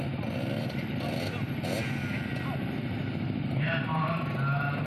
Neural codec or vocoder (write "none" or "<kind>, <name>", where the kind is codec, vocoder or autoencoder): none